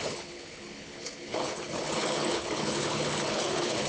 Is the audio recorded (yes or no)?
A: no